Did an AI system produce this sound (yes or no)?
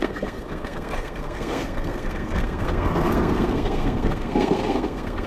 yes